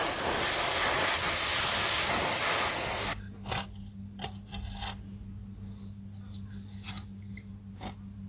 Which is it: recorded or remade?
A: recorded